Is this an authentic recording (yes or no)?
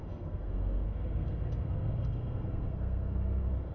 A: no